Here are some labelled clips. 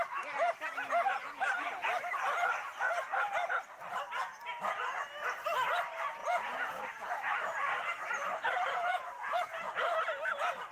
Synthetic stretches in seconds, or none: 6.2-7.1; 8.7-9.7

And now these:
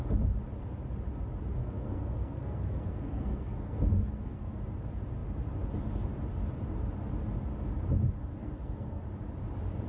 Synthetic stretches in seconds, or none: 1.6-4.6; 8.3-9.0

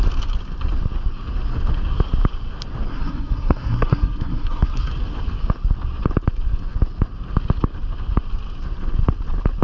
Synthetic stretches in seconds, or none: 2.9-4.9